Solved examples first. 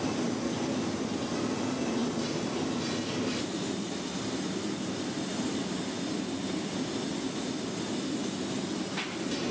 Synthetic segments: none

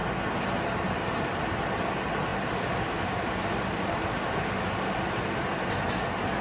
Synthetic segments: 2.3-4.0 (vocoder, BigVGAN v2)

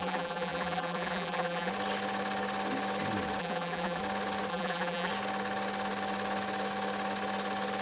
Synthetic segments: 0.0-1.7 (vocoder, BigVGAN v2); 3.4-4.0; 4.5-5.1